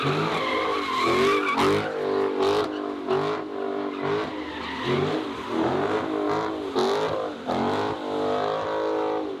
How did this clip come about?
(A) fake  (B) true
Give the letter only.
B